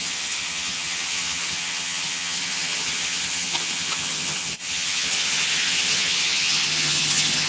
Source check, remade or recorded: remade